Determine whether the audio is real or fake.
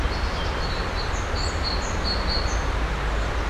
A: real